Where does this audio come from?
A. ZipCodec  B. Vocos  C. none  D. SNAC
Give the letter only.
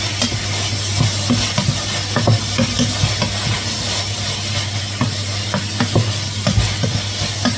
C